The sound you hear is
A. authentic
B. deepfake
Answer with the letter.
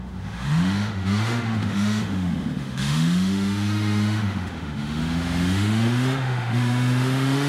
B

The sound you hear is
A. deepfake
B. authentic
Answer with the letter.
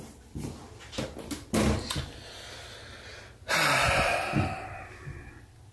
B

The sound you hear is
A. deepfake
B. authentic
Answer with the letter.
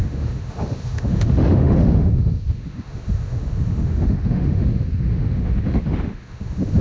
A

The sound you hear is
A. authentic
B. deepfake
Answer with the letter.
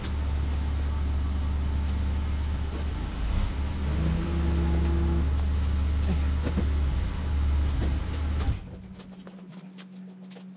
A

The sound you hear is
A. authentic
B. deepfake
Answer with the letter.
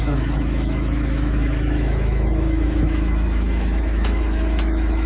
B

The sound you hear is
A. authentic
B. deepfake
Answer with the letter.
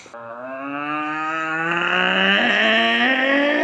B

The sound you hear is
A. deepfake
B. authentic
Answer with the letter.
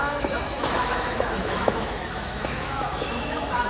A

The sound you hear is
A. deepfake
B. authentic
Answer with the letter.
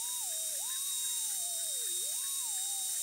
B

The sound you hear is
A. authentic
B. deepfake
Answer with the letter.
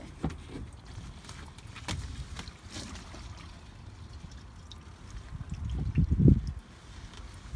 A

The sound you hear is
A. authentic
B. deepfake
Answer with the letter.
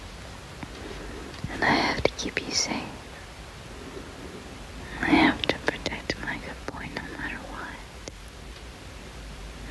A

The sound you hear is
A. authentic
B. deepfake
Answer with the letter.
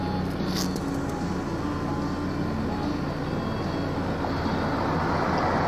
A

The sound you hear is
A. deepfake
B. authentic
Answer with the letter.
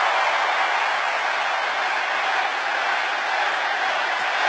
B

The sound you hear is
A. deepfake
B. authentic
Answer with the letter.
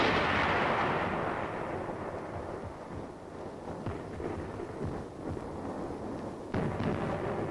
B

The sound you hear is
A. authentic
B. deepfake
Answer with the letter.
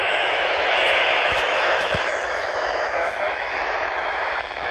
B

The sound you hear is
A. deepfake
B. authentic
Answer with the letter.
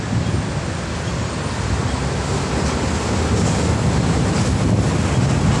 B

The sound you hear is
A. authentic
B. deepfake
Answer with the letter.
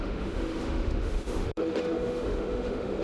B